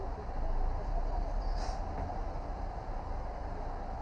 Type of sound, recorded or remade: recorded